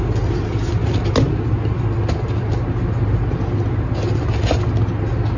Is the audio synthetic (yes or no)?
no